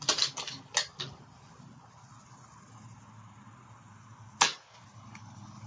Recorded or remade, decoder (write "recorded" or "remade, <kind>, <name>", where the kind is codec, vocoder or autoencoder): recorded